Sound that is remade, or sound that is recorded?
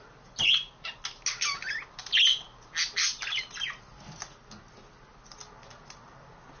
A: recorded